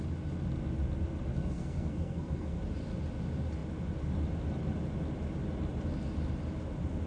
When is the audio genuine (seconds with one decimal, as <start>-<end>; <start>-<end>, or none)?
0.0-1.3; 2.6-7.1